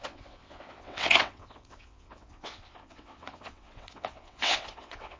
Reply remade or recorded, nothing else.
remade